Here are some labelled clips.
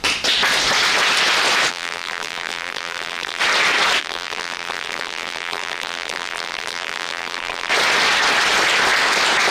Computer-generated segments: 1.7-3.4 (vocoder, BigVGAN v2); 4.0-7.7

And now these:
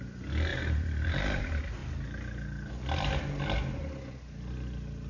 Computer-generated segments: 0.5-1.4 (vocoder, BigVGAN v2)